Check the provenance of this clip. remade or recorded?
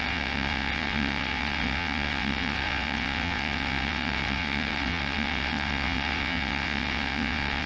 remade